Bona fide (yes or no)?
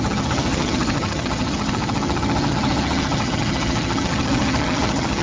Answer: no